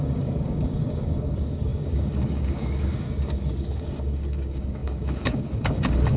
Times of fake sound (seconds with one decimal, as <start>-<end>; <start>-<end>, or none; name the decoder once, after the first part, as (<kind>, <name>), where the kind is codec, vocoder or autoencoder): 0.0-6.2 (codec, DAC)